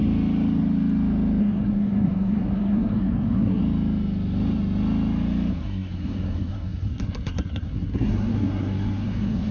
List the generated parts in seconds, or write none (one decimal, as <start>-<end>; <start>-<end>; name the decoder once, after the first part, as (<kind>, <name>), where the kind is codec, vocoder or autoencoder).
1.4-3.6 (codec, SNAC); 5.5-9.5